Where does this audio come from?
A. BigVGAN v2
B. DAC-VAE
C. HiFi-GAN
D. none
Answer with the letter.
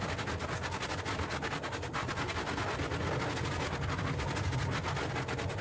D